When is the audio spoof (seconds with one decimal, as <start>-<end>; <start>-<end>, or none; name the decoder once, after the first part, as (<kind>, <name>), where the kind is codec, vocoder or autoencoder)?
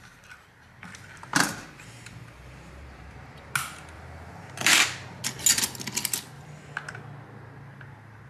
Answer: 1.3-3.5 (vocoder, BigVGAN v2); 4.6-5.2